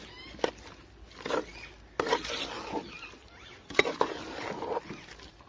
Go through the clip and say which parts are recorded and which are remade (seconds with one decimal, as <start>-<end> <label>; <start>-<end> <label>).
0.0-5.5 recorded